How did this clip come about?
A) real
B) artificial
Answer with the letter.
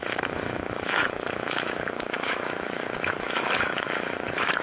B